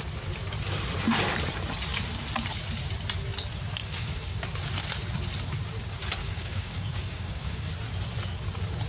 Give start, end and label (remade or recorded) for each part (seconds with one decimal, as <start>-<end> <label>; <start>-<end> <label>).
0.0-3.8 recorded; 3.8-4.4 remade; 4.4-6.2 recorded; 6.2-7.7 remade; 7.7-8.9 recorded